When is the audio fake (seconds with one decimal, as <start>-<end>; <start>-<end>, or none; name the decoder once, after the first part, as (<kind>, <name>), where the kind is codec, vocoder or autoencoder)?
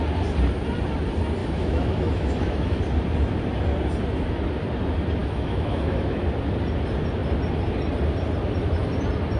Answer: 1.4-2.8 (autoencoder, DAC-VAE); 5.2-6.2